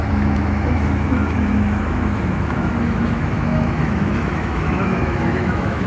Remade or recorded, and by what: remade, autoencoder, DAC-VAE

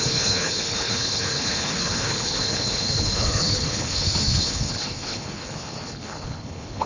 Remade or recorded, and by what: remade, codec, HILCodec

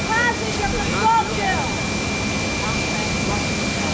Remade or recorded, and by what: recorded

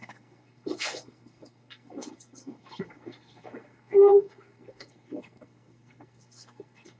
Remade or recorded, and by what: remade, codec, SNAC